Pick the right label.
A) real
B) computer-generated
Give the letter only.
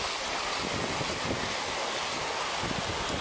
A